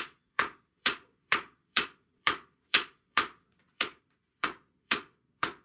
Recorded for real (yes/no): no